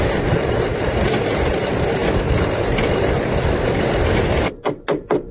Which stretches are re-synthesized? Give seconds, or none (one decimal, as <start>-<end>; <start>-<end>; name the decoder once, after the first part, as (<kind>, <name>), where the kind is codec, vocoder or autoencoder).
none